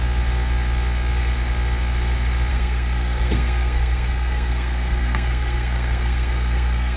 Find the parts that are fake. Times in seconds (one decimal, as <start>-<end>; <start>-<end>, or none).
2.5-7.0